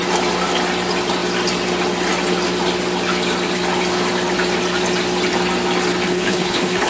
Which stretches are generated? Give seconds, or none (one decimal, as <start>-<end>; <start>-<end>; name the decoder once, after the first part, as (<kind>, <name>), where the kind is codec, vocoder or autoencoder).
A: 6.1-6.9 (codec, HILCodec)